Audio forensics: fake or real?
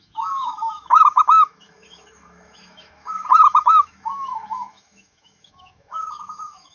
fake